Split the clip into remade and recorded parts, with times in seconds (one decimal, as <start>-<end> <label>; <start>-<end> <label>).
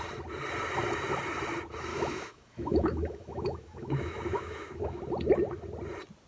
0.0-1.9 recorded; 1.9-5.0 remade; 5.0-6.3 recorded